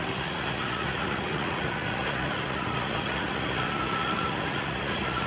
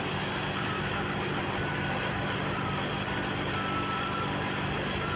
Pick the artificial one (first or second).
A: first